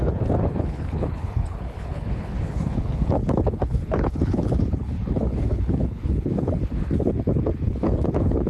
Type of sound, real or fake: fake